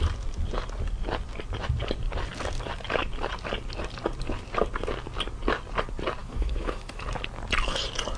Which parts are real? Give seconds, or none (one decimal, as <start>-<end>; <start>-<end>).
0.0-6.2; 7.0-8.2